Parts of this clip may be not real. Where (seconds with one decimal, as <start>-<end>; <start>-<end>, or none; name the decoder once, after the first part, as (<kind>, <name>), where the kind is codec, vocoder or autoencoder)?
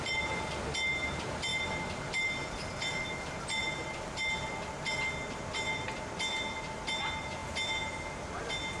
none